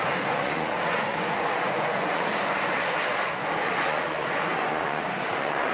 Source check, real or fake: fake